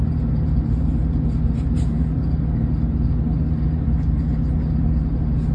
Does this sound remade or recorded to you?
recorded